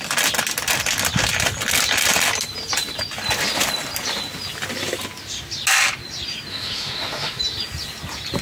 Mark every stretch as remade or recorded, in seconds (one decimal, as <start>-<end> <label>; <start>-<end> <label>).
0.0-6.5 recorded; 6.5-7.4 remade; 7.4-8.4 recorded